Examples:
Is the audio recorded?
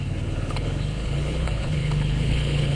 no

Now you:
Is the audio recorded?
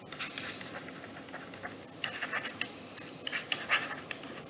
yes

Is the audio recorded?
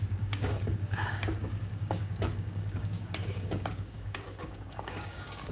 no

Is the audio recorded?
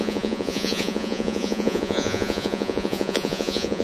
no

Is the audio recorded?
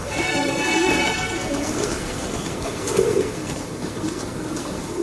no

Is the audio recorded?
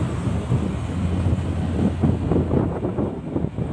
yes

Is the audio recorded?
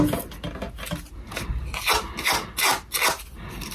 yes